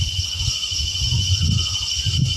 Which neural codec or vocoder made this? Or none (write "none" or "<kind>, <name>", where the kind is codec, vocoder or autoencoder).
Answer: vocoder, Vocos